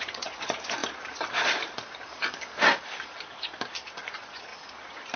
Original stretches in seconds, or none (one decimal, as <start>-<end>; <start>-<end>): 0.8-3.9; 4.5-5.2